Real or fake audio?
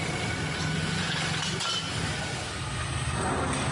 real